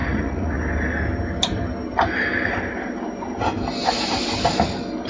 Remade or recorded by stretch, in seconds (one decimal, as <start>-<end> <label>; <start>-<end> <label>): 0.0-0.6 remade; 0.6-5.1 recorded